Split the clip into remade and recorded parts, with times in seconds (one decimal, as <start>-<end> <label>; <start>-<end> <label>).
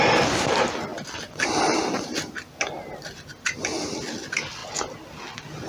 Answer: 0.0-5.7 recorded